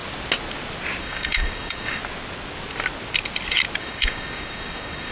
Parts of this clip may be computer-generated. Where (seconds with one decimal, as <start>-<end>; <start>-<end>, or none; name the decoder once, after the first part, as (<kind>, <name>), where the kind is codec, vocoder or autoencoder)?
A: 1.0-2.0 (codec, DAC); 3.8-5.1